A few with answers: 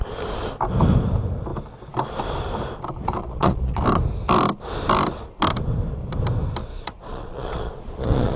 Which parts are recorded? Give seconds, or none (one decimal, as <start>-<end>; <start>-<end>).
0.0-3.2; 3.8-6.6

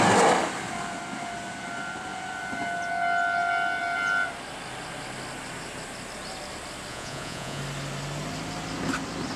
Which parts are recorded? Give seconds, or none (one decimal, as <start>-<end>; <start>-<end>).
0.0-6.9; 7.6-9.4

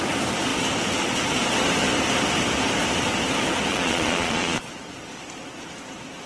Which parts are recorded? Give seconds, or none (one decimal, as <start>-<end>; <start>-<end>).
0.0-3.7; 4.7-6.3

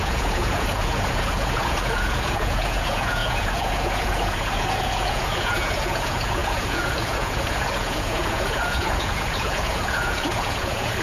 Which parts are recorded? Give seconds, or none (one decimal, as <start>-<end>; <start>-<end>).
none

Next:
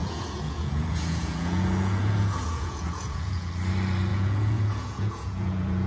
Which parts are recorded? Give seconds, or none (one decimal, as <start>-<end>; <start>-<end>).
3.5-4.1